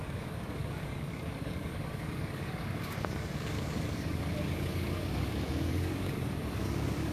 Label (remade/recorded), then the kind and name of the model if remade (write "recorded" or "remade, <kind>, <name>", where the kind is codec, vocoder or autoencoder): remade, codec, DAC